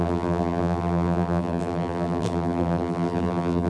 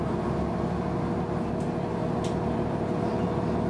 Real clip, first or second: second